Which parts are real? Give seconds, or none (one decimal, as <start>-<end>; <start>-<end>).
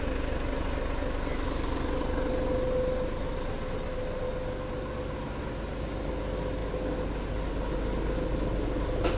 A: 0.0-9.2